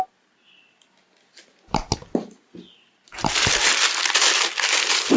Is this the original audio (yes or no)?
yes